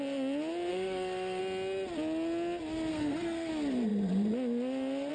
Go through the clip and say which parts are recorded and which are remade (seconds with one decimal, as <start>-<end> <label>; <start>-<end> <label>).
0.0-0.7 recorded; 0.7-1.4 remade; 1.4-2.9 recorded; 2.9-3.5 remade; 3.5-5.1 recorded